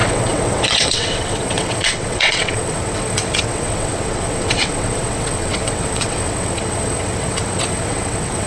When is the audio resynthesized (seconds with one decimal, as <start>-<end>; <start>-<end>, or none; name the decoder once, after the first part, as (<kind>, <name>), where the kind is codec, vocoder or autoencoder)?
0.0-8.5 (vocoder, WaveNeXt)